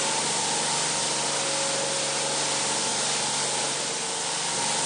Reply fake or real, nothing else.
real